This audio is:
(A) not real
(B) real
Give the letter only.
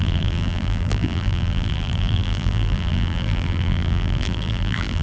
A